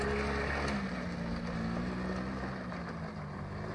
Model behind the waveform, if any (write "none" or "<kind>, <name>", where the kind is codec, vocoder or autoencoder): none